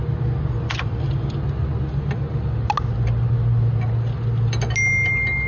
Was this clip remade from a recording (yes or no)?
no